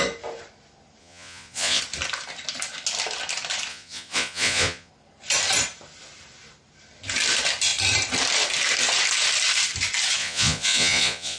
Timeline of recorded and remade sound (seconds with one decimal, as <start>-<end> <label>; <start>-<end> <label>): 0.0-1.0 recorded; 1.0-1.8 remade; 1.8-3.7 recorded; 3.7-4.9 remade; 4.9-10.2 recorded; 10.2-11.4 remade